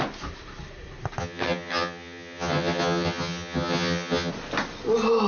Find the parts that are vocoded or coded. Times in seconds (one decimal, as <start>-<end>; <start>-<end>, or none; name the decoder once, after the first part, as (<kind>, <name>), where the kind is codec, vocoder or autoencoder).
1.2-4.3 (vocoder, HiFi-GAN)